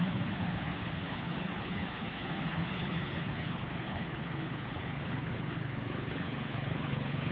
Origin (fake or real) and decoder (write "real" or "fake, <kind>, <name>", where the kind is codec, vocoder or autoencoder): fake, codec, HILCodec